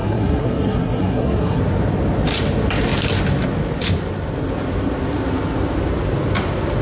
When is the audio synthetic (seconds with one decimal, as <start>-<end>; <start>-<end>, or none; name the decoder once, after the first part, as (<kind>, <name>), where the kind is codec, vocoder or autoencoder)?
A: 0.0-1.6 (codec, SNAC)